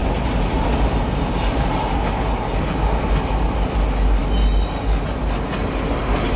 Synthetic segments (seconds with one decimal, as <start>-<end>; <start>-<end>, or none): none

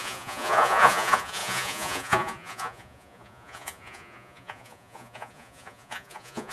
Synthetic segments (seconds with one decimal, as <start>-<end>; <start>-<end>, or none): 0.0-6.5

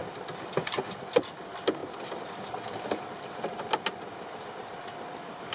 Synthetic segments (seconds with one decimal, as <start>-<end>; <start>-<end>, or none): none

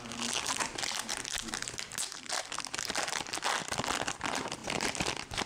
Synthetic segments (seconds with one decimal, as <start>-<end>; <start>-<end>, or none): none

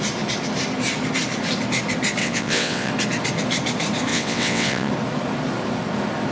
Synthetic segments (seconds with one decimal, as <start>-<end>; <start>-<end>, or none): 2.2-2.9; 4.1-4.9

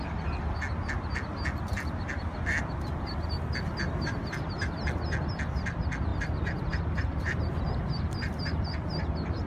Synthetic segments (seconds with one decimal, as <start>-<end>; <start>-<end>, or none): 1.7-2.7; 6.1-7.4